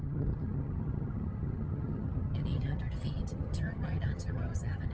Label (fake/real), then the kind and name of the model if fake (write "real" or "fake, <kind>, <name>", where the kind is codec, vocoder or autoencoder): fake, vocoder, HiFi-GAN